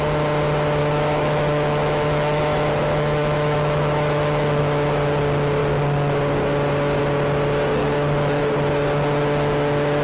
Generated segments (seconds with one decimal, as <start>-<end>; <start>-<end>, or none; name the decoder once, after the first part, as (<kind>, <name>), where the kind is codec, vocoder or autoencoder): 0.8-4.6 (autoencoder, DAC-VAE); 7.8-8.4